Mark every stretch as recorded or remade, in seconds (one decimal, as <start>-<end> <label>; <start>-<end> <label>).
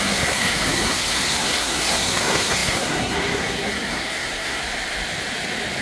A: 0.0-4.6 remade; 4.6-5.8 recorded